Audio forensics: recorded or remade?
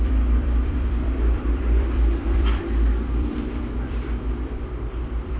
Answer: remade